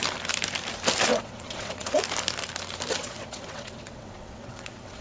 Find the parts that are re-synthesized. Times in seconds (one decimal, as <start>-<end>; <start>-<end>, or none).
1.1-2.0; 3.0-5.0